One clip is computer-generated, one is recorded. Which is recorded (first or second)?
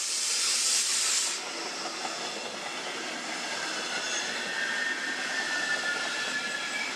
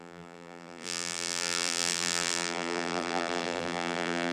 first